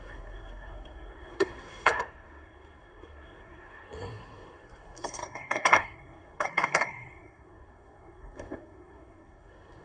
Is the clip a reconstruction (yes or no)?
yes